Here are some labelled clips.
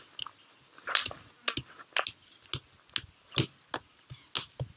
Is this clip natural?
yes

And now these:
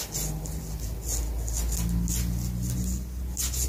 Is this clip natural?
yes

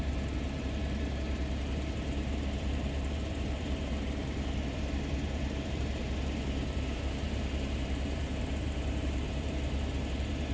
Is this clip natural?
no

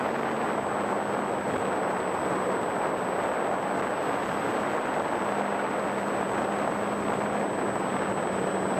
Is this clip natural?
yes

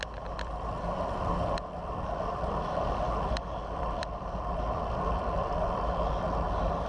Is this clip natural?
no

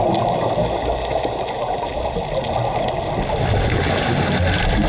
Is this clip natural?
yes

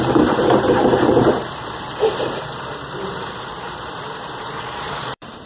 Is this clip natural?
no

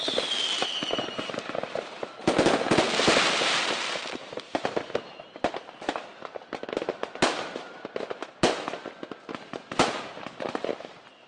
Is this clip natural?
no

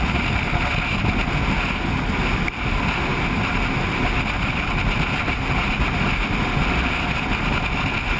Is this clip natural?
yes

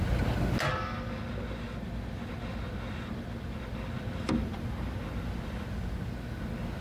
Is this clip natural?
yes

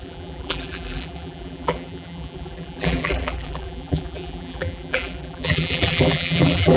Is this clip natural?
no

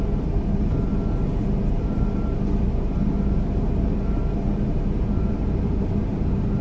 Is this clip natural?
no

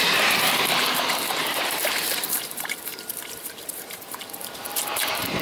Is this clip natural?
no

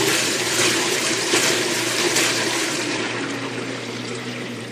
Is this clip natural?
no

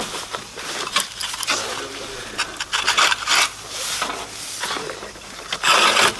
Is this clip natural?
yes